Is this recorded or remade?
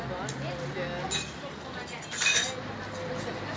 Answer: recorded